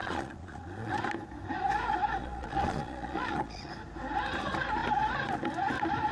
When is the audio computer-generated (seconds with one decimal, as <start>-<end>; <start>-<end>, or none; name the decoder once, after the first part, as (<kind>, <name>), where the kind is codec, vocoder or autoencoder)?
0.0-1.0 (vocoder, Vocos); 2.2-3.7